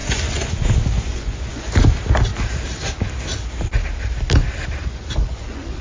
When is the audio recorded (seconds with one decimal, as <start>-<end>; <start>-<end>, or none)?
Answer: 0.5-1.1; 1.7-4.8